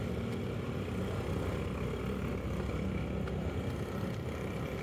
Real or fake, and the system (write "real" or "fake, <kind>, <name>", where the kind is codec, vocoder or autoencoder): real